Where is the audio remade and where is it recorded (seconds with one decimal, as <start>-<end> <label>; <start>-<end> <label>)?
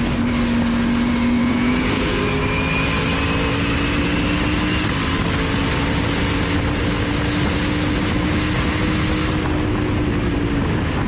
0.0-1.4 recorded; 1.4-2.2 remade; 2.2-11.1 recorded